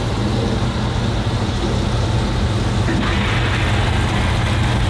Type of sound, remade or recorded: recorded